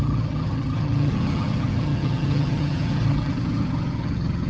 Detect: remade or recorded remade